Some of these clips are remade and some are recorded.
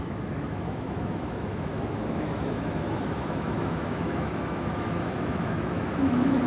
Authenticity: remade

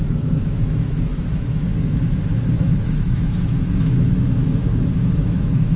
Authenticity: remade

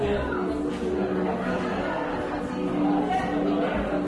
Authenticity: recorded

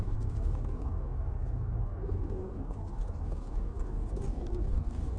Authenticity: remade